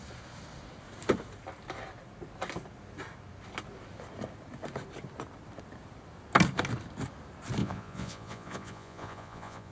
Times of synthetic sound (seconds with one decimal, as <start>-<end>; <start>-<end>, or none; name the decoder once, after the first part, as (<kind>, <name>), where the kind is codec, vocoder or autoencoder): 7.6-9.7 (vocoder, Vocos)